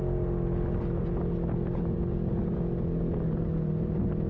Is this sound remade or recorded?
recorded